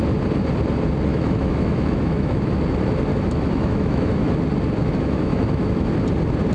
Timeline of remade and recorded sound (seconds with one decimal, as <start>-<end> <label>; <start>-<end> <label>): 0.0-1.1 recorded; 1.1-2.5 remade; 2.5-3.1 recorded; 3.1-4.3 remade; 4.3-4.8 recorded; 4.8-5.9 remade; 5.9-6.5 recorded

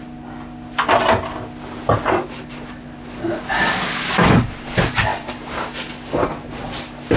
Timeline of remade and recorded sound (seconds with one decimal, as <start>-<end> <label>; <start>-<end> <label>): 0.0-7.2 recorded

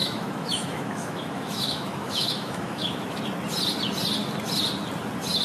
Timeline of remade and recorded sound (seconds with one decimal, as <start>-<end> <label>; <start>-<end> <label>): 0.0-3.2 remade; 3.2-5.4 recorded